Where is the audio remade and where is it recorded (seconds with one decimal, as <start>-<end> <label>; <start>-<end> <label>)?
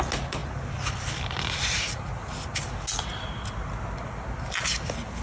0.0-5.2 recorded